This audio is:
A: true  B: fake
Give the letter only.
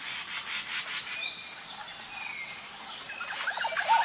A